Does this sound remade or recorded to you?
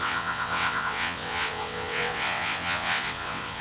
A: remade